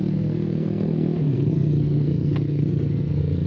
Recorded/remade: remade